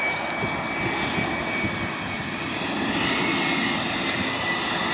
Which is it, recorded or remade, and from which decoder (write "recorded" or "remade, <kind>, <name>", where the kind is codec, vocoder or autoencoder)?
recorded